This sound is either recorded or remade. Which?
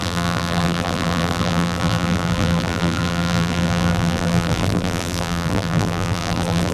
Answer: remade